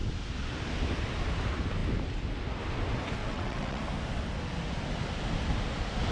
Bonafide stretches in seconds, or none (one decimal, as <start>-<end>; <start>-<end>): 0.0-3.2; 3.8-6.1